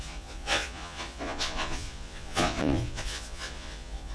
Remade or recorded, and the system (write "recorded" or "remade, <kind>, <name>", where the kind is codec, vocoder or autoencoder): remade, vocoder, Vocos